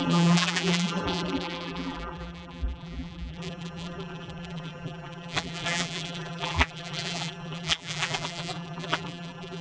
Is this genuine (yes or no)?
no